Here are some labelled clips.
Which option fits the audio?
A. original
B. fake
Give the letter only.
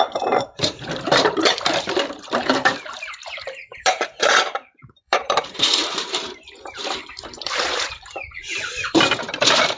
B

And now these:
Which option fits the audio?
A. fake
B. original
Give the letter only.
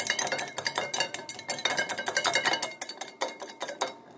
B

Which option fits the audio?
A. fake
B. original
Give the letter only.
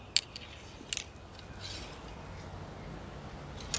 B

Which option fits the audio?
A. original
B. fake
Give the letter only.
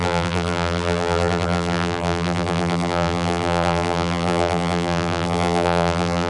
B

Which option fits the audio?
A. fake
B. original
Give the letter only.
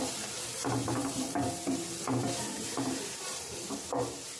A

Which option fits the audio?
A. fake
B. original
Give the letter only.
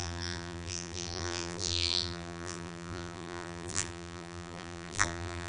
A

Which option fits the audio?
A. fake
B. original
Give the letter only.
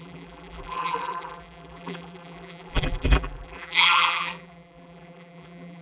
A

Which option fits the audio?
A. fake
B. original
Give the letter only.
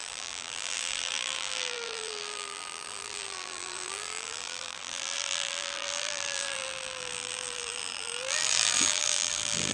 A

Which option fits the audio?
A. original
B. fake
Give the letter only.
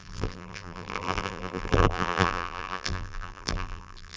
B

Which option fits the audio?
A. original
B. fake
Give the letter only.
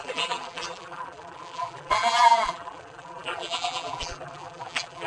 B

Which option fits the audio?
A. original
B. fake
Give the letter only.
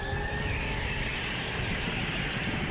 A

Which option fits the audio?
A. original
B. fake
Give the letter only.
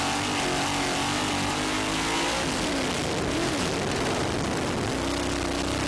A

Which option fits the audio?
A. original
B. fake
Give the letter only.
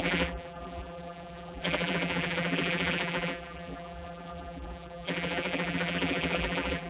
B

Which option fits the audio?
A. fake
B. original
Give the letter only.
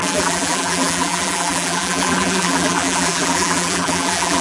A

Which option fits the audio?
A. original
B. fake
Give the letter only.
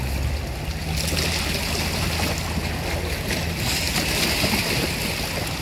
A